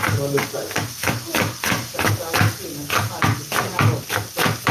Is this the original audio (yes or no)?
yes